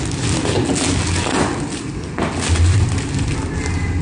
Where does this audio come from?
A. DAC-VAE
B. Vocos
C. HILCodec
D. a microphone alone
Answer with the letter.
D